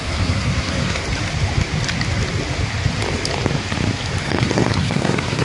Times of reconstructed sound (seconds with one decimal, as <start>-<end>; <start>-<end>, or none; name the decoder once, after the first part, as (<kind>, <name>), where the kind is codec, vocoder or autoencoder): 0.0-1.0 (codec, SNAC); 4.2-5.4